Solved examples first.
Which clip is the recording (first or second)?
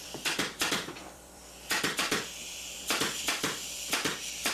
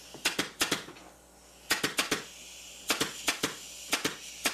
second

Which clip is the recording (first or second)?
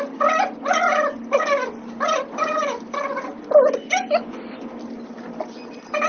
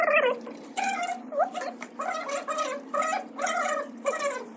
first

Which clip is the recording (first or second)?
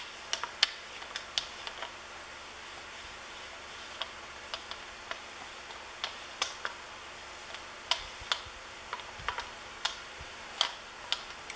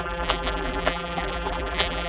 first